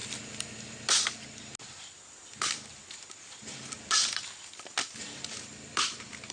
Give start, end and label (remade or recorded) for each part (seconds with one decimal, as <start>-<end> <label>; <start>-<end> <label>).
0.0-1.8 recorded; 1.8-2.8 remade; 2.8-3.6 recorded; 3.6-6.3 remade